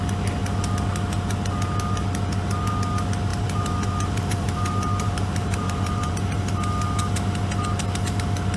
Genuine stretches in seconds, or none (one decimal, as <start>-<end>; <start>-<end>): 0.0-3.3; 6.1-8.6